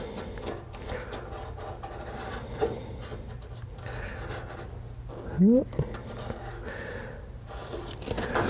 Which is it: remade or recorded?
recorded